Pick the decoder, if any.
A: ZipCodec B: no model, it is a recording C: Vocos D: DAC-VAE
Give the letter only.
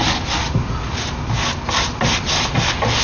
B